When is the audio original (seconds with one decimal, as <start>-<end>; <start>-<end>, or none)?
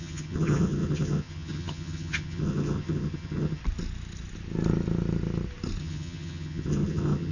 3.6-5.8